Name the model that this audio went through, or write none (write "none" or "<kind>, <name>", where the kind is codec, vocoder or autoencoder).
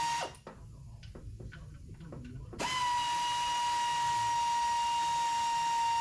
none